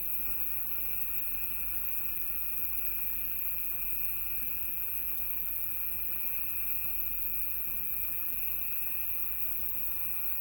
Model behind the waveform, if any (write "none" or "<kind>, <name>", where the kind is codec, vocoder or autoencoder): vocoder, BigVGAN v2